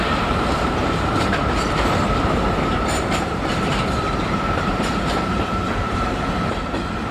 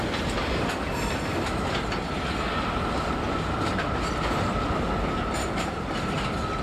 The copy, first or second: first